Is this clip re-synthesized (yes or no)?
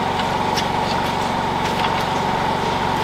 no